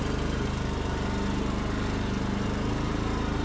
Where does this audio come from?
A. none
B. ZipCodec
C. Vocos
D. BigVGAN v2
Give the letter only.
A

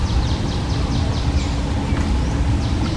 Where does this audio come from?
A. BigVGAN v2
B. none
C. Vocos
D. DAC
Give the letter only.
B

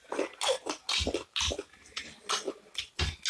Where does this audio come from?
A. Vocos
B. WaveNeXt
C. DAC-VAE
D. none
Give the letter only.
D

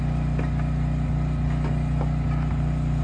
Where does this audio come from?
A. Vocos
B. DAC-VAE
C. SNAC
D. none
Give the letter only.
D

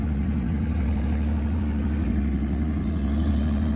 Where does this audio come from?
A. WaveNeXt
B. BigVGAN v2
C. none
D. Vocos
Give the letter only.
D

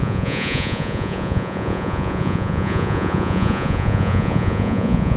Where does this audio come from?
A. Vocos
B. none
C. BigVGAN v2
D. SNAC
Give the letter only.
A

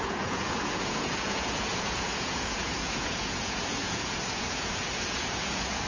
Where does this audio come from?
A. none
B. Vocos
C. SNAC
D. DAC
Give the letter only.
B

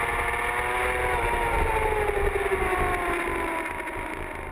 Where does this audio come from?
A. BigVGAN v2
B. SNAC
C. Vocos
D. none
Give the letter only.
D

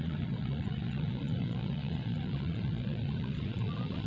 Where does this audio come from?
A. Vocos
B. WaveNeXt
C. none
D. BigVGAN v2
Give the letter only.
A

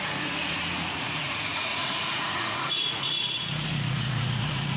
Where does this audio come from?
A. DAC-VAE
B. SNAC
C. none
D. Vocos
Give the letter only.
D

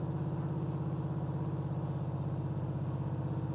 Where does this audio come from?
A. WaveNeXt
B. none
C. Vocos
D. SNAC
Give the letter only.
B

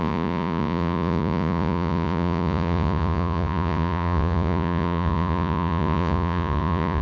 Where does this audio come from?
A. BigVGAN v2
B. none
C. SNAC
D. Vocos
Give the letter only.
D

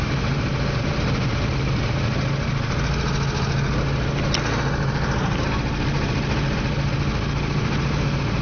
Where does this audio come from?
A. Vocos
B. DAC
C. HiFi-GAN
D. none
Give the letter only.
D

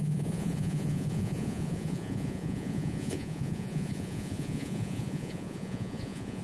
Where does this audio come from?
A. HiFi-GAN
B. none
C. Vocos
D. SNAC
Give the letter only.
C